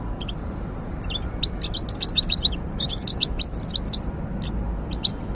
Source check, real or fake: real